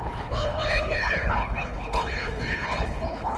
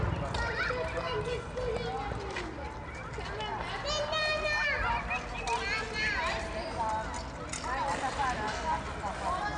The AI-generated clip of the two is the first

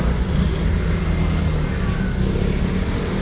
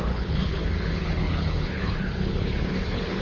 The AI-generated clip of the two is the second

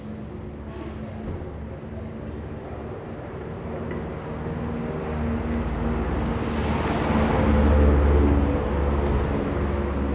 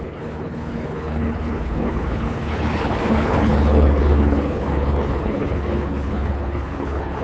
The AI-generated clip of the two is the second